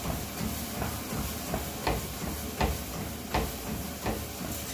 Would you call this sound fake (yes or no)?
no